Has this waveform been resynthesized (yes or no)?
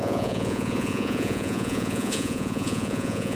yes